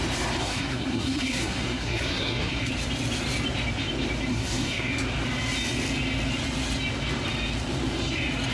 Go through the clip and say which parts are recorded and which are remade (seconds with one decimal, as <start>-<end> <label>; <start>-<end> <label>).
0.0-0.4 recorded; 0.4-2.7 remade; 2.7-4.3 recorded; 4.3-4.9 remade; 4.9-8.5 recorded